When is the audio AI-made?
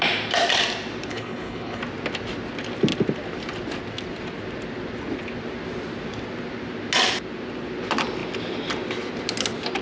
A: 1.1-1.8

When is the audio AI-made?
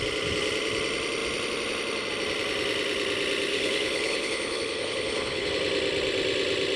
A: 3.5-5.5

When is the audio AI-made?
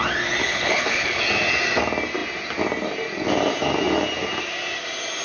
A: 0.4-1.2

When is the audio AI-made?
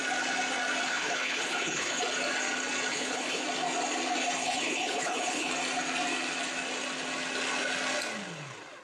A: 0.9-2.0; 2.9-3.4; 4.4-5.5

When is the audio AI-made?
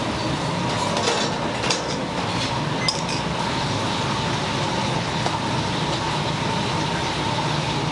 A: 4.8-5.3